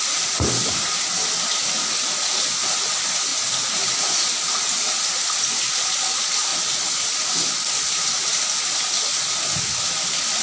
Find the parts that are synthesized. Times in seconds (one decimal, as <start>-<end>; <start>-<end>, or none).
none